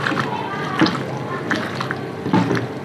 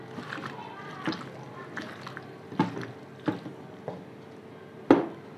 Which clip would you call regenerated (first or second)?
first